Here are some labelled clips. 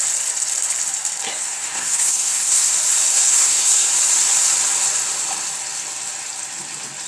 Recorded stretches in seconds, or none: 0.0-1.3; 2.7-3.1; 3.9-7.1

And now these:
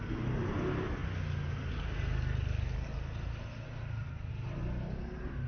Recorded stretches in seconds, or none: 0.0-5.5

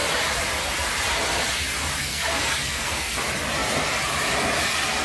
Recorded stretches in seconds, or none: 0.0-2.0; 3.1-5.0